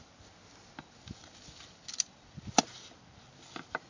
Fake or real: real